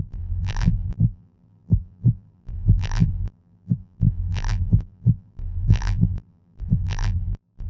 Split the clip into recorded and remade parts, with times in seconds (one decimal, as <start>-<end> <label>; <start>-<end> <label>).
0.0-7.7 remade